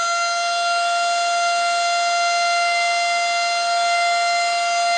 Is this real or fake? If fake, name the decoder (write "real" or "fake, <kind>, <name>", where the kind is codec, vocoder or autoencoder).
real